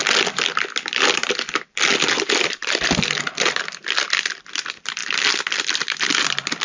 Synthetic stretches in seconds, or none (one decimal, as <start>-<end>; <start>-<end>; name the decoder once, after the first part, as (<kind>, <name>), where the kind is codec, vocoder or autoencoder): none